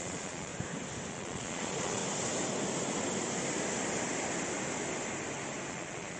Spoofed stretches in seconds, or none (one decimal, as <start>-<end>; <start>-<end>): 0.0-0.5; 1.1-2.0; 5.7-6.2